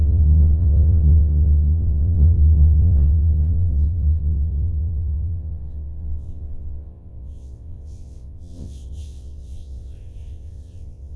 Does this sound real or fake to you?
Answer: fake